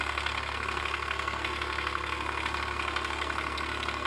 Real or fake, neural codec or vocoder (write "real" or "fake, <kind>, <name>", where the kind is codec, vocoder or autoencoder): fake, codec, SNAC